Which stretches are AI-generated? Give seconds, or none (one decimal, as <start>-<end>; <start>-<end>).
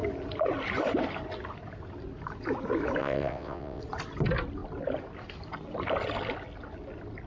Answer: 3.0-3.8